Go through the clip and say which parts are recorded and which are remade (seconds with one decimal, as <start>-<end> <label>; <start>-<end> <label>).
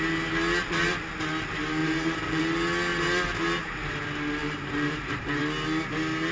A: 0.0-1.8 recorded; 1.8-2.4 remade; 2.4-4.4 recorded; 4.4-5.4 remade; 5.4-6.3 recorded